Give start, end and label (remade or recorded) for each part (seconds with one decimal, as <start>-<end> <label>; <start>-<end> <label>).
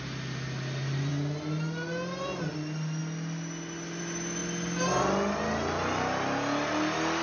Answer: 0.0-7.2 recorded